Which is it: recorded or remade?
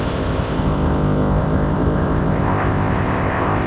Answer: remade